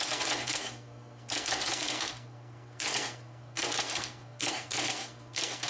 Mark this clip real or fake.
fake